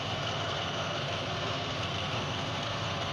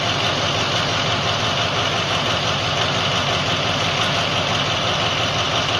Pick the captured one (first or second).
second